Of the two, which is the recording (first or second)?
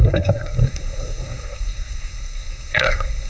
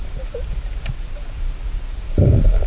second